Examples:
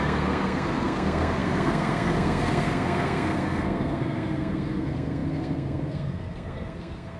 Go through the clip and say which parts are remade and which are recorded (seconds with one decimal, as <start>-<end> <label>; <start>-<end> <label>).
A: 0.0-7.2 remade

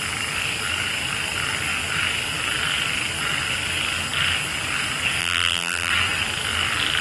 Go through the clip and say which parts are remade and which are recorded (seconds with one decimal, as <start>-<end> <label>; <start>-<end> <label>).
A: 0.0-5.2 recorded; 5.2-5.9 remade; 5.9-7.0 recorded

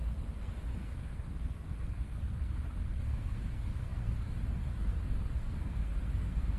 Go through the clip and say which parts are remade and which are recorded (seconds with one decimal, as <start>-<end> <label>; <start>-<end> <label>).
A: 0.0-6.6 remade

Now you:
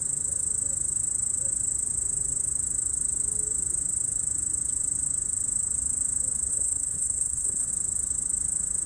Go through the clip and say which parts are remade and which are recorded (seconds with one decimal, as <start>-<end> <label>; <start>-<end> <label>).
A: 0.0-6.5 recorded; 6.5-7.7 remade; 7.7-8.9 recorded

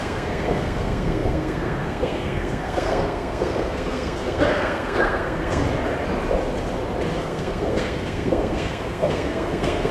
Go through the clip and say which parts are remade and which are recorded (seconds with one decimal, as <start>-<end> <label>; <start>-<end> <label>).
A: 0.0-5.6 remade; 5.6-7.2 recorded; 7.2-9.9 remade

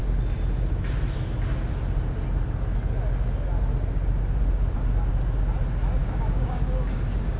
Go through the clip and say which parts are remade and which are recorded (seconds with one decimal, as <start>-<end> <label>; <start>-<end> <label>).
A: 0.0-6.0 recorded; 6.0-6.6 remade; 6.6-7.4 recorded

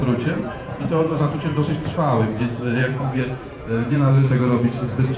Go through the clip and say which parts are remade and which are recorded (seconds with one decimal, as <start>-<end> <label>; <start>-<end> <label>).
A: 0.0-1.8 remade; 1.8-2.4 recorded; 2.4-5.2 remade